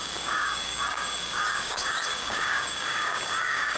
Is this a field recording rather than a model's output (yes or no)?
no